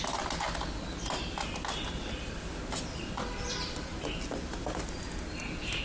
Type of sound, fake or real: real